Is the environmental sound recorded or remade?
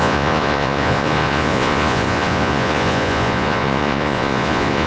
remade